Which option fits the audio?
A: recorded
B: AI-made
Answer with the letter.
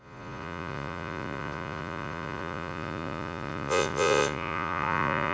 B